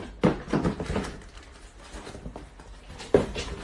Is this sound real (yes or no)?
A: yes